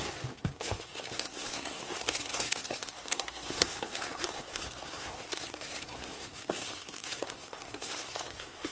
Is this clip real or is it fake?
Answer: fake